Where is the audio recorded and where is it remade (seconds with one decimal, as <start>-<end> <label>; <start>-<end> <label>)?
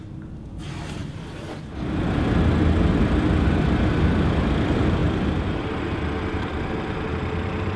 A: 0.0-7.8 recorded